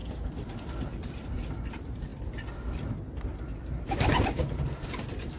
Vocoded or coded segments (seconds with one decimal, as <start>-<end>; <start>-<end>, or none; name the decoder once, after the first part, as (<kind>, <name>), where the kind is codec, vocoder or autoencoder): none